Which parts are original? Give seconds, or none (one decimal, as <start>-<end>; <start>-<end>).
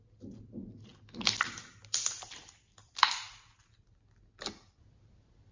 0.0-5.5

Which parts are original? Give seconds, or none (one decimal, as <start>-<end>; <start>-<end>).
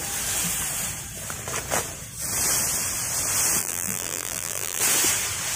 0.0-3.6; 4.8-5.6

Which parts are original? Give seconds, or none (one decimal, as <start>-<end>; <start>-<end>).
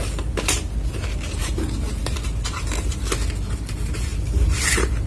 0.0-5.1